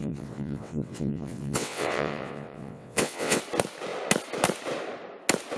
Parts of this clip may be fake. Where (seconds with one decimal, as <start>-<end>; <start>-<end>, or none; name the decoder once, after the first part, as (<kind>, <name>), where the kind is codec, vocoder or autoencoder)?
0.0-3.4 (vocoder, WaveNeXt)